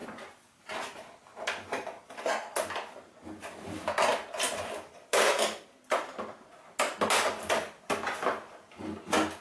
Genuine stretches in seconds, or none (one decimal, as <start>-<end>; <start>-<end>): 0.0-9.4